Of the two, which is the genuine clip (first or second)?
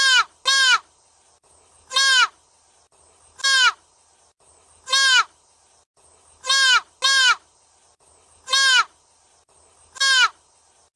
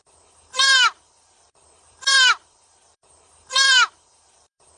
first